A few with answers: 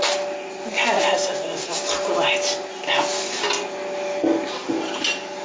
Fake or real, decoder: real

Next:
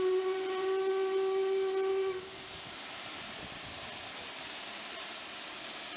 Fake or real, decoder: real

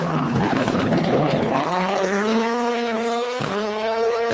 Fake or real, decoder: fake, codec, HILCodec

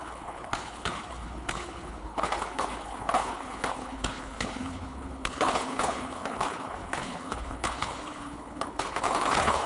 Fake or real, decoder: fake, codec, HILCodec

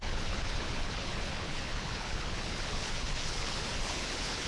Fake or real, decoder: fake, codec, HILCodec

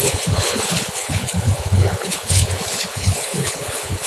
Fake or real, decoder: fake, codec, HILCodec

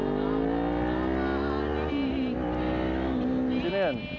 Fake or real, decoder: real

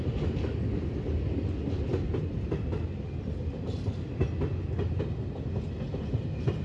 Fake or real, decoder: real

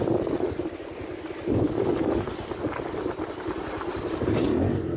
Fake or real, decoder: real